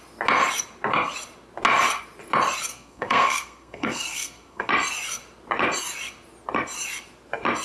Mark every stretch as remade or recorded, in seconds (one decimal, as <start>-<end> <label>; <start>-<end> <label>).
0.0-2.7 recorded; 2.7-4.7 remade; 4.7-7.6 recorded